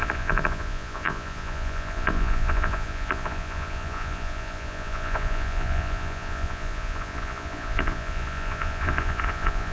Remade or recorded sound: remade